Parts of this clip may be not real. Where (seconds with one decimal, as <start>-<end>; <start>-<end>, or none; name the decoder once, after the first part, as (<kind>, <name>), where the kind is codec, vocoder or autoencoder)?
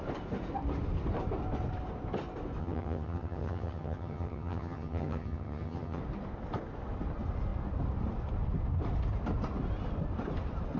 2.6-6.0 (vocoder, HiFi-GAN)